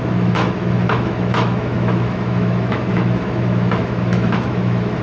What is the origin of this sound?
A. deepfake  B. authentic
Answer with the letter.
A